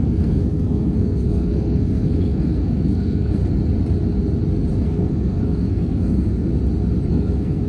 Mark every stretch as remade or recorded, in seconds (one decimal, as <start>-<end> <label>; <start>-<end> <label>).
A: 0.0-3.4 remade; 3.4-4.7 recorded; 4.7-6.5 remade; 6.5-7.1 recorded; 7.1-7.7 remade